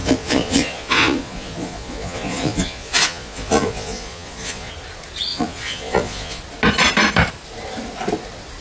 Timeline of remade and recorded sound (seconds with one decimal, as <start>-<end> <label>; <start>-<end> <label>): 0.0-4.7 remade; 4.7-5.3 recorded; 5.3-6.4 remade; 6.4-8.6 recorded